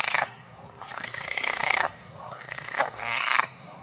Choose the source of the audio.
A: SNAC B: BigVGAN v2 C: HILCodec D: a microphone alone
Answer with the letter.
A